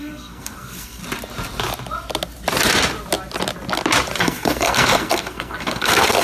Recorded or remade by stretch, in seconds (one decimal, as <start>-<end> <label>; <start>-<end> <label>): 0.0-1.0 remade; 1.0-4.2 recorded; 4.2-6.2 remade